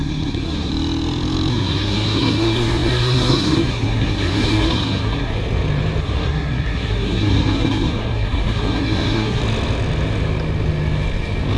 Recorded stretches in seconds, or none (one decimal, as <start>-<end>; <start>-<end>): 0.7-1.5; 5.3-6.0; 9.4-11.6